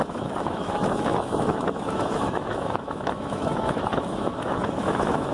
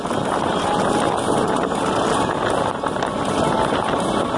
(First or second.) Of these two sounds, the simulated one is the first